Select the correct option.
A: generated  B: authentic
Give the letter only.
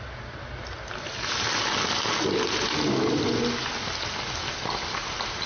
B